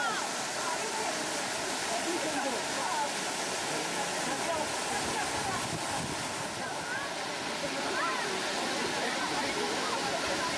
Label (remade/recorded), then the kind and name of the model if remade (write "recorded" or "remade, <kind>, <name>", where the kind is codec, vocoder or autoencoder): recorded